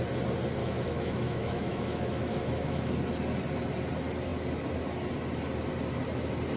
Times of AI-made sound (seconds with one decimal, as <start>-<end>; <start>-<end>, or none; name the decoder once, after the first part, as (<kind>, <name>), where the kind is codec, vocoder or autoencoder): 0.6-2.9 (autoencoder, DAC-VAE)

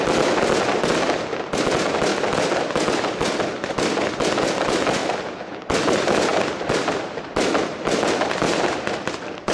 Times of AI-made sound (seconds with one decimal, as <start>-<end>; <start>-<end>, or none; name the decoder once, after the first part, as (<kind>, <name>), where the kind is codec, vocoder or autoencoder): 0.0-2.1 (vocoder, BigVGAN v2); 3.0-5.0; 5.6-9.5

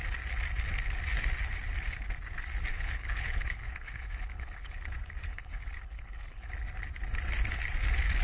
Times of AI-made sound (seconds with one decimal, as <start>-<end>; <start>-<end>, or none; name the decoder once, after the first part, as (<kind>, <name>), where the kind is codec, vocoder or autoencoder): 2.7-4.8 (codec, HILCodec); 5.3-6.5

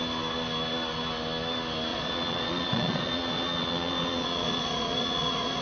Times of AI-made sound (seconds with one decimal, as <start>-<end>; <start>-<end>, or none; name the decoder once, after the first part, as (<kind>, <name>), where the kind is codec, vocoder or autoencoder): 1.9-5.6 (vocoder, Vocos)

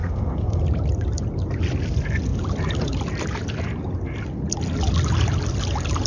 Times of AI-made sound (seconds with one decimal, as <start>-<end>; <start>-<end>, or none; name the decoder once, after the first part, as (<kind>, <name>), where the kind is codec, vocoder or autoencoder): 0.0-0.6 (codec, SNAC)

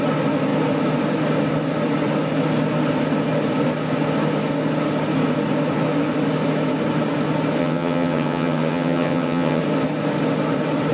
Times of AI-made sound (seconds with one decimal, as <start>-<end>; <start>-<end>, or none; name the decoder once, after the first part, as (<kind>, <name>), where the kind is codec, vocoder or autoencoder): 7.6-9.6 (vocoder, HiFi-GAN)

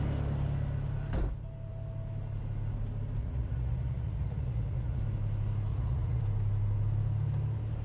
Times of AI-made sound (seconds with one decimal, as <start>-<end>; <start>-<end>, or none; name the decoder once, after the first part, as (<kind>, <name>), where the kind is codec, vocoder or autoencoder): 3.2-5.0 (vocoder, Vocos); 5.7-6.2

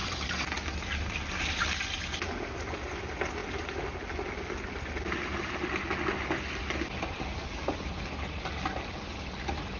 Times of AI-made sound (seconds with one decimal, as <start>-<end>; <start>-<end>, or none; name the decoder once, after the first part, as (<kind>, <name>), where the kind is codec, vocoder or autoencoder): none